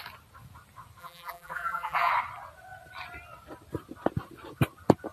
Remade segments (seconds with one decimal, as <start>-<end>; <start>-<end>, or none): 1.0-2.1